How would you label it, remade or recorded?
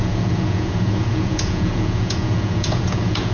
remade